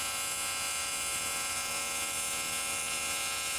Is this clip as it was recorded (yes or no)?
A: no